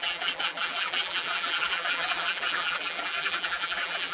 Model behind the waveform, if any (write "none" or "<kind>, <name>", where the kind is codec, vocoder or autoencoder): vocoder, BigVGAN v2